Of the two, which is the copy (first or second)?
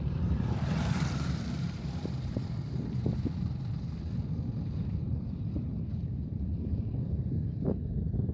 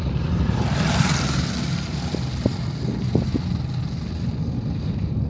first